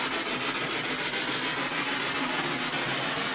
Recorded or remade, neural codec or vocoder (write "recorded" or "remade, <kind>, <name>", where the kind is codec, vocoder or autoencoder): recorded